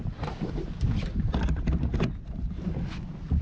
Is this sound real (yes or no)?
yes